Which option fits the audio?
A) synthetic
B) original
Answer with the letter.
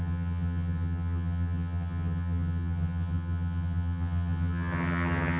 A